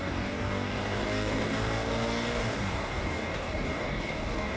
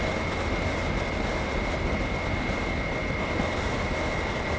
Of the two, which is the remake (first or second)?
first